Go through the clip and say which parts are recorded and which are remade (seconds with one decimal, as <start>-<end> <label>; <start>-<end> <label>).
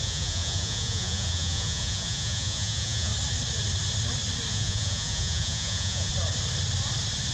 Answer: 0.0-3.1 remade; 3.1-4.5 recorded; 4.5-6.1 remade; 6.1-7.3 recorded